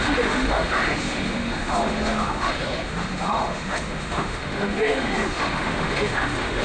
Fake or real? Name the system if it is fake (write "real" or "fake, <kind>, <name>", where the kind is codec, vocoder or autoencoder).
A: fake, autoencoder, DAC-VAE